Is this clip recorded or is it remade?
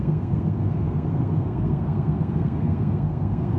remade